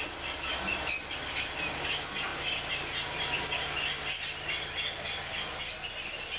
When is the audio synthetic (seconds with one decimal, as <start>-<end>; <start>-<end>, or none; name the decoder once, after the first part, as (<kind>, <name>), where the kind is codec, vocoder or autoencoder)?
none